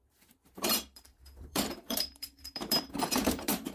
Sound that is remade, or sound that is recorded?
remade